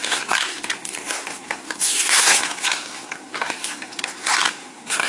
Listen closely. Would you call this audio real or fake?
fake